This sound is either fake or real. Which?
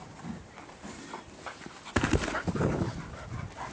real